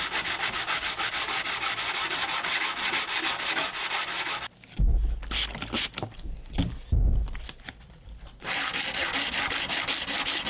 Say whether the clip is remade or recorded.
recorded